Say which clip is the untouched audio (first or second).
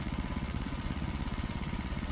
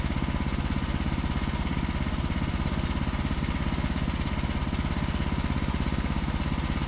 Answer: second